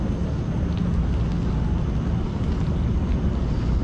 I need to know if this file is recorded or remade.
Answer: recorded